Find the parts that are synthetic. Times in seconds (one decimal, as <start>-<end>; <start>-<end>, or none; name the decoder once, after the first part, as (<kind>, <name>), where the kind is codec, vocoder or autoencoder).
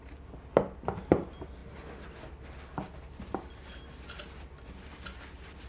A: none